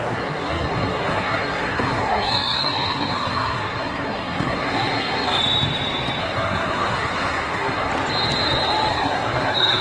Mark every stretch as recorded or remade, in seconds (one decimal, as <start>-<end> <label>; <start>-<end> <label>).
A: 0.0-5.4 remade; 5.4-6.2 recorded; 6.2-7.9 remade; 7.9-8.9 recorded; 8.9-9.8 remade